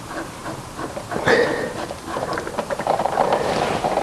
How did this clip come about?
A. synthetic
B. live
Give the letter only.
A